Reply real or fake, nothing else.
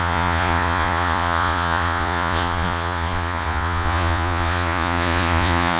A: fake